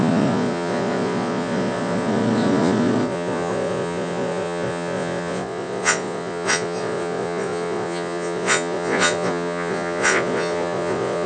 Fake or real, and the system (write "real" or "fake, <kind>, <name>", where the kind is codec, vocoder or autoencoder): fake, vocoder, Vocos